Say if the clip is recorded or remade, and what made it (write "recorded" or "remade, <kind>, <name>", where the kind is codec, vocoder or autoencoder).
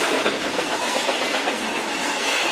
remade, codec, SNAC